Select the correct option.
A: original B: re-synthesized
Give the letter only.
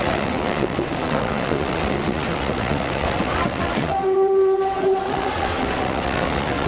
B